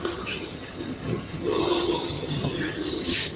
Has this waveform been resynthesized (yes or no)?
yes